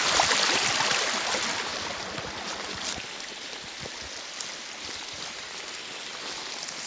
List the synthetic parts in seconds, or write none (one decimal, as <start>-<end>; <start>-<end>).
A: none